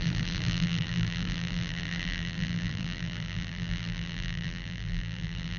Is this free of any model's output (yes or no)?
no